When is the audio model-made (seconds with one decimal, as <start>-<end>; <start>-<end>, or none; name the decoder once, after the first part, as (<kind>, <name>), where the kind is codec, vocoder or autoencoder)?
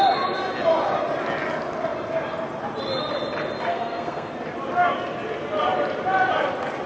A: 3.7-4.3 (codec, SNAC)